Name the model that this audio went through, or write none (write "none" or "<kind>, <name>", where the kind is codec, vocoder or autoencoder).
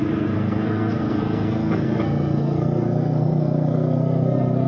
codec, SNAC